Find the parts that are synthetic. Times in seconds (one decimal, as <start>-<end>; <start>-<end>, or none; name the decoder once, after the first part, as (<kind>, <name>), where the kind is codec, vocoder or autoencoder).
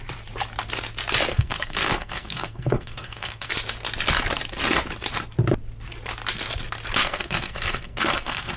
1.3-3.5 (codec, SNAC); 7.0-8.6